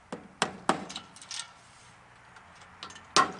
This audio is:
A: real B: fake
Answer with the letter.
A